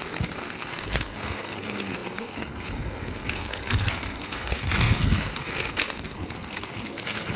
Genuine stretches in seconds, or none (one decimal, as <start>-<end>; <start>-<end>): none